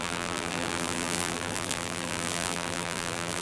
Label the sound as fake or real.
fake